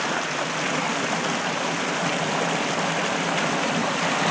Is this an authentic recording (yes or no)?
yes